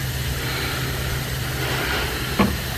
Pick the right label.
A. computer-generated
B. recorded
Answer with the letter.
B